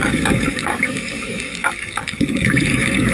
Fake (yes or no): yes